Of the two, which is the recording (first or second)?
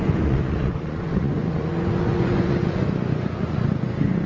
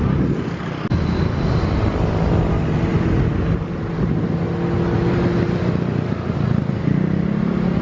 second